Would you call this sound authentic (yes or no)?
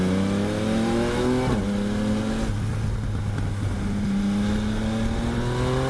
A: yes